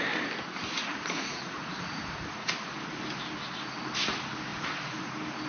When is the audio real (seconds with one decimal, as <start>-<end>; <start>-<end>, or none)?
0.0-0.8; 2.5-4.5; 5.1-5.5